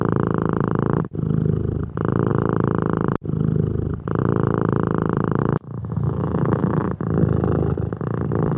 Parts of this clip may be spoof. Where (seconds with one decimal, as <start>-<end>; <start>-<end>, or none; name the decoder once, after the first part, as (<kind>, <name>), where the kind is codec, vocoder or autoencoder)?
5.4-6.8 (autoencoder, DAC-VAE)